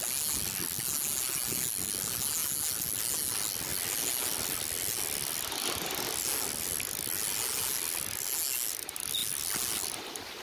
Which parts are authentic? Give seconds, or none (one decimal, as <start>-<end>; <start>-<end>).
0.0-10.4